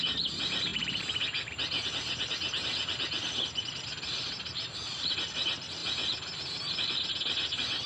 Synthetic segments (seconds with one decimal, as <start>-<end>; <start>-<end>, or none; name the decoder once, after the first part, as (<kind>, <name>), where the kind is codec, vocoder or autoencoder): none

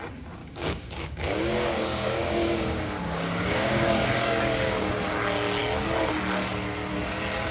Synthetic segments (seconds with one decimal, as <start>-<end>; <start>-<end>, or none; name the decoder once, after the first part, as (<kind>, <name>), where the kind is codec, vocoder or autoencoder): 0.4-4.9 (codec, DAC)

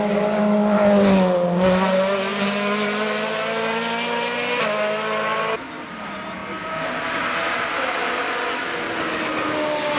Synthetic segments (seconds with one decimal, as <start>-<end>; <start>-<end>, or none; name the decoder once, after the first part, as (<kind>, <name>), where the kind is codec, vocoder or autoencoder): none